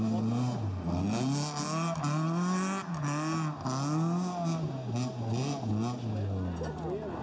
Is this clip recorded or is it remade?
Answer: recorded